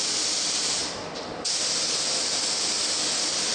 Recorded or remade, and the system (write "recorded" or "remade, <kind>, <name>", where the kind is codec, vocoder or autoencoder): recorded